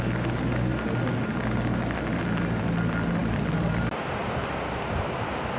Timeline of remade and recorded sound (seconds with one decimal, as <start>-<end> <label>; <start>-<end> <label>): 0.0-5.6 recorded